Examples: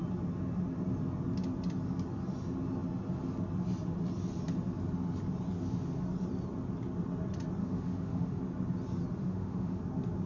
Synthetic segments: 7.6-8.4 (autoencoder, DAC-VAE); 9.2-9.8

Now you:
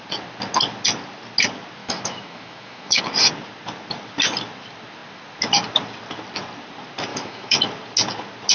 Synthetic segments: 1.8-3.0 (autoencoder, DAC-VAE); 7.1-7.6

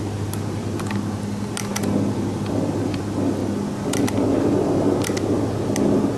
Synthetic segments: none

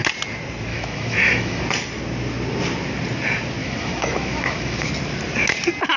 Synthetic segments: 0.7-1.6 (autoencoder, DAC-VAE); 3.6-4.9

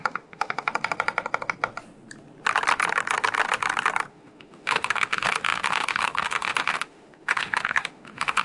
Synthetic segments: 0.0-0.7 (autoencoder, DAC-VAE); 4.1-8.4

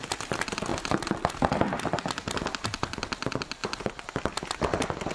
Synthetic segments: none

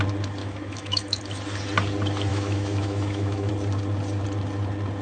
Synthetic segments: 0.4-1.2 (autoencoder, DAC-VAE); 2.3-3.5

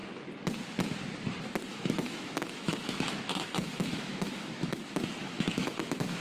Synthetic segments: 1.7-4.8 (autoencoder, DAC-VAE); 5.2-6.2